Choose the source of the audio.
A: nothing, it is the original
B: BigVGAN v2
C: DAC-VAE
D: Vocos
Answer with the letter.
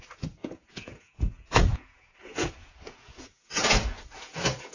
D